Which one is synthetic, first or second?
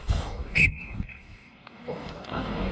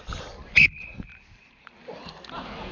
first